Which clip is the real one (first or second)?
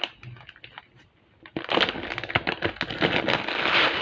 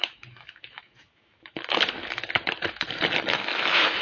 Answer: first